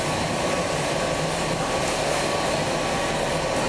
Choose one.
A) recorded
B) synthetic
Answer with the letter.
A